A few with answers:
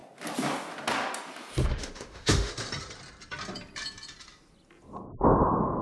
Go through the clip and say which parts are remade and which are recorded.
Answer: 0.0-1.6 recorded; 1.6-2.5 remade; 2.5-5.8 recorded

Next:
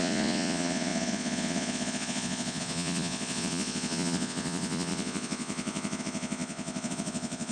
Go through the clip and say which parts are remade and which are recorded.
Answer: 0.0-7.5 remade

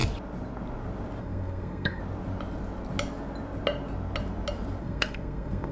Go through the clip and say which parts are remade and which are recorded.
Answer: 0.0-1.2 recorded; 1.2-2.0 remade; 2.0-4.8 recorded; 4.8-5.7 remade